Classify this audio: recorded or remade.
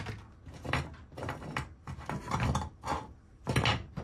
recorded